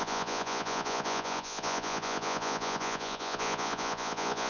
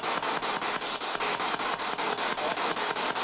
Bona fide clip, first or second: second